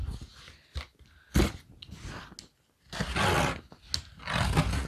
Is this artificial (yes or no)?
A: no